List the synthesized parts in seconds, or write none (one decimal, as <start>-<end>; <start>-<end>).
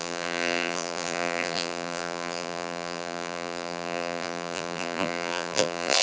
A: 0.0-6.0